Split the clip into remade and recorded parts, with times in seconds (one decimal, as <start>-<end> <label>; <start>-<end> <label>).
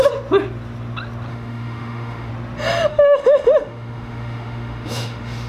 0.0-1.3 recorded; 1.3-2.3 remade; 2.3-2.9 recorded; 2.9-5.5 remade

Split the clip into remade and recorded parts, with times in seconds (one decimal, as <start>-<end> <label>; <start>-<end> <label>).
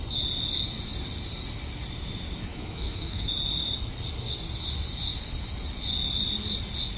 0.0-2.5 recorded; 2.5-3.3 remade; 3.3-7.0 recorded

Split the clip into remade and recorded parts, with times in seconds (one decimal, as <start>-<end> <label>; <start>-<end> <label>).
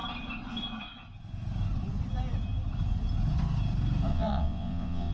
0.0-4.1 recorded; 4.1-5.1 remade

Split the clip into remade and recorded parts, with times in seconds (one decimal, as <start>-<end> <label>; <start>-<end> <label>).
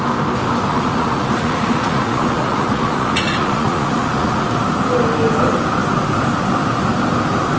0.0-0.7 recorded; 0.7-4.4 remade; 4.4-7.6 recorded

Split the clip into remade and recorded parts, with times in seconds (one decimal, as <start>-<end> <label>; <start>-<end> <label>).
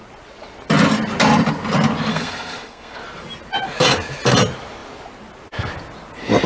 0.0-2.1 recorded; 2.1-3.0 remade; 3.0-6.5 recorded